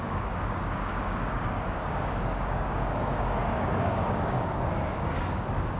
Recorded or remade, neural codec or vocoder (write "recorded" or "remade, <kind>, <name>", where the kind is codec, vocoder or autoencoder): remade, codec, DAC